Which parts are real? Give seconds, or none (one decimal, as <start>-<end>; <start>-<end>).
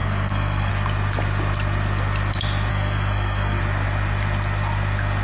0.7-2.7; 3.6-5.2